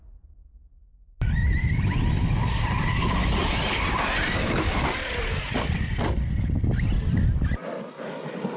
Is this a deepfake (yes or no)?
no